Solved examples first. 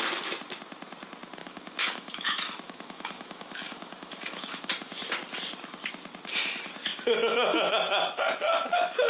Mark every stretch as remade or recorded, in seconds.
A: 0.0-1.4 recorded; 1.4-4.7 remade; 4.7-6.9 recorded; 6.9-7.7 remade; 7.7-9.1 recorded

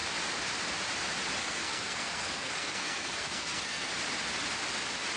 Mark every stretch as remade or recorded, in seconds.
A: 0.0-1.4 recorded; 1.4-3.9 remade; 3.9-5.2 recorded

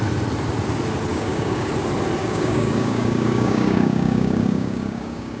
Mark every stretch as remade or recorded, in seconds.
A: 0.0-1.1 recorded; 1.1-1.7 remade; 1.7-2.2 recorded; 2.2-5.4 remade

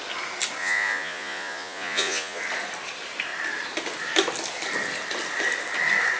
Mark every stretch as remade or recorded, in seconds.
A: 0.0-0.6 recorded; 0.6-2.4 remade; 2.4-6.2 recorded

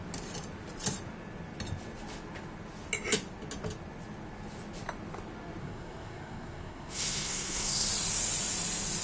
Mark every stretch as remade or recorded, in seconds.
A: 0.0-5.6 recorded; 5.6-7.9 remade; 7.9-9.0 recorded

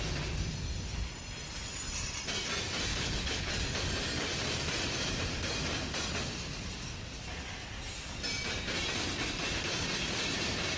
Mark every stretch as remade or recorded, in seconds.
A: 0.0-2.9 recorded; 2.9-3.5 remade; 3.5-10.8 recorded

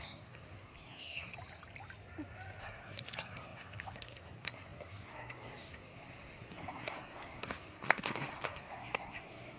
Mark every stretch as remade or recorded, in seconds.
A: 0.0-1.3 remade; 1.3-2.6 recorded; 2.6-9.6 remade